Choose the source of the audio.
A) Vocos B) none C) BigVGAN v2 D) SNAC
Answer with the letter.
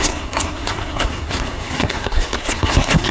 D